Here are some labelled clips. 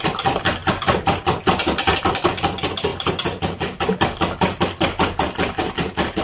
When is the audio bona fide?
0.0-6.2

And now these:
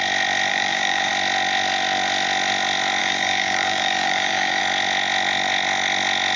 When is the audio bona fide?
0.0-0.5; 1.1-3.0; 4.6-6.4